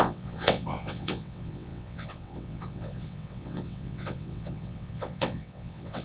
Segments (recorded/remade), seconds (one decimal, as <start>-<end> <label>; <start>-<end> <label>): 0.0-6.0 remade